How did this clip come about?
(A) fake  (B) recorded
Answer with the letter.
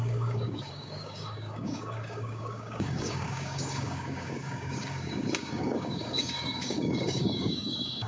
A